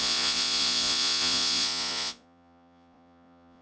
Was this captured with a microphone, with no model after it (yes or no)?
no